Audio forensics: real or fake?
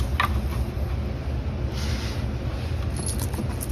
real